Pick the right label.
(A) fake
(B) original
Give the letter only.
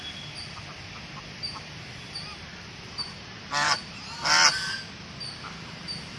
B